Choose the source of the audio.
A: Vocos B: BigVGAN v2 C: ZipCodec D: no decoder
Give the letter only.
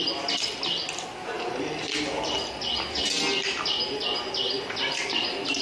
D